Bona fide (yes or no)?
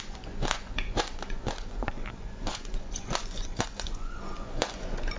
no